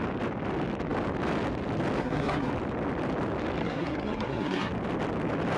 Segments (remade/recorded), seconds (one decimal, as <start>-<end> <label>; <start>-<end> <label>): 0.0-2.0 recorded; 2.0-2.5 remade; 2.5-3.6 recorded; 3.6-4.7 remade; 4.7-5.6 recorded